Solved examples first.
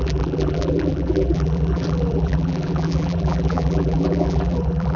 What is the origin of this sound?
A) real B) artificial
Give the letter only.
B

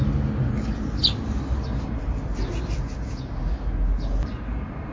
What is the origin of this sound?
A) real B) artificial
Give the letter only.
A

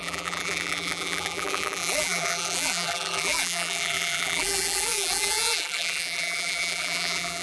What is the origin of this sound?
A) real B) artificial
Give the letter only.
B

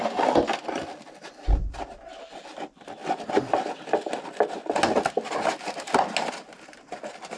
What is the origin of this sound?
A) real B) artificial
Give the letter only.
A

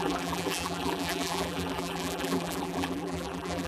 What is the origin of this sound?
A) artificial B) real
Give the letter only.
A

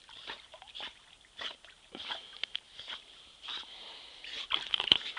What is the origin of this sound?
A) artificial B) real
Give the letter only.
A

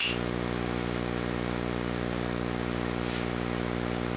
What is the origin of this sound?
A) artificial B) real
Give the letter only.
B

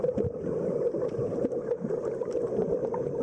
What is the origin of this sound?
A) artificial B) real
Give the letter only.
B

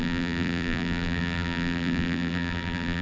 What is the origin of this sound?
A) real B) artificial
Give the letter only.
B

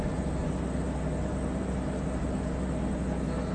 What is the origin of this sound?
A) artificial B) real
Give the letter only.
B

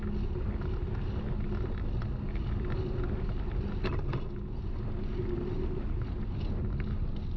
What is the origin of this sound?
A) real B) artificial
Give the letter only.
A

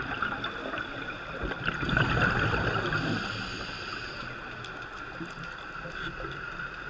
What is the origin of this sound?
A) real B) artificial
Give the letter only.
A